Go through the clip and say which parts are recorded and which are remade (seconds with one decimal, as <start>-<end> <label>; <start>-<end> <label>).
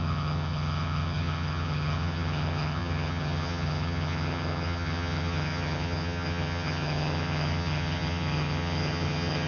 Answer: 0.0-9.5 remade